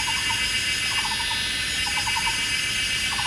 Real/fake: real